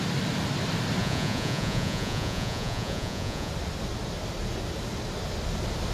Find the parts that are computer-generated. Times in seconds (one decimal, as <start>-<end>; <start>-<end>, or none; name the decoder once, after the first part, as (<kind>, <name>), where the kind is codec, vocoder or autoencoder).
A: 1.0-3.5 (vocoder, Vocos)